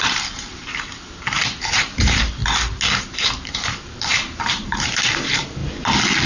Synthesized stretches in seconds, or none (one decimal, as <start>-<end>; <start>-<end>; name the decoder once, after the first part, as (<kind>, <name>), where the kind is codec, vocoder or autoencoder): 0.0-2.4 (vocoder, BigVGAN v2); 3.0-5.6